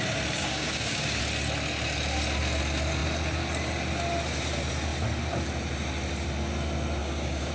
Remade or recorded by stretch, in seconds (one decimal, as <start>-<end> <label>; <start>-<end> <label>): 0.0-0.4 recorded; 0.4-1.2 remade; 1.2-7.0 recorded; 7.0-7.5 remade

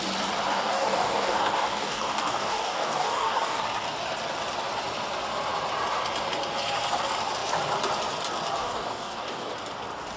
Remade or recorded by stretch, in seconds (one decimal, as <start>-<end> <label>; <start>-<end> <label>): 0.0-0.5 recorded; 0.5-3.6 remade; 3.6-8.6 recorded; 8.6-9.5 remade; 9.5-10.2 recorded

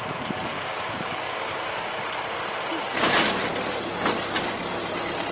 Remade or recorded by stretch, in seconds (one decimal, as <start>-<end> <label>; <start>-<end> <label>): 0.0-0.5 recorded; 0.5-1.9 remade; 1.9-5.3 recorded

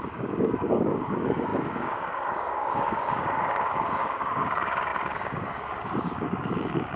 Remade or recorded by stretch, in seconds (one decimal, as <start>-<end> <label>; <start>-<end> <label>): 0.0-7.0 remade